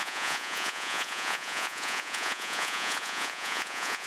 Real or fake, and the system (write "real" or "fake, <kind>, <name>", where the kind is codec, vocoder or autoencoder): fake, vocoder, Vocos